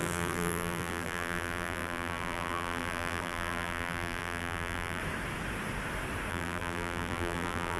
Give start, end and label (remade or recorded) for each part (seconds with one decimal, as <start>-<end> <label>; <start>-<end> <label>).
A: 0.0-5.0 remade; 5.0-6.3 recorded; 6.3-7.8 remade